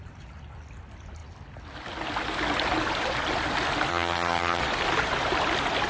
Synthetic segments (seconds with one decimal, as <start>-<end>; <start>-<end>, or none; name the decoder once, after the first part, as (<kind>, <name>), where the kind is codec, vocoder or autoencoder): 3.9-4.6 (vocoder, HiFi-GAN)